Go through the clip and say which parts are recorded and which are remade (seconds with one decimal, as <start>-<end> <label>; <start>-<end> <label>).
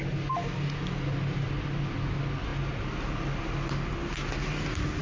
0.0-5.0 recorded